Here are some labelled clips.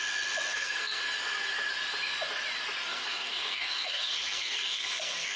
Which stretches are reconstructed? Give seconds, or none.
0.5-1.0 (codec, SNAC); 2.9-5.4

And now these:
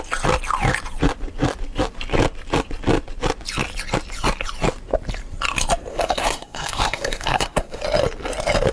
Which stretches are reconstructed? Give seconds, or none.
5.9-7.8 (codec, SNAC)

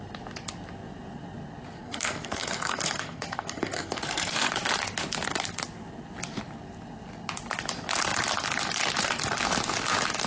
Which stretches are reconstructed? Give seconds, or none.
1.8-4.5 (codec, SNAC)

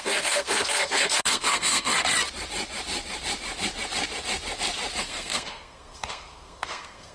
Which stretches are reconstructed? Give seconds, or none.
0.0-1.9 (codec, SNAC); 5.0-7.1

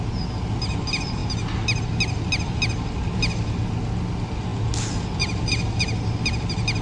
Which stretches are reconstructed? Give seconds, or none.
none